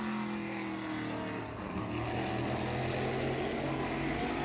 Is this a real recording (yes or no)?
yes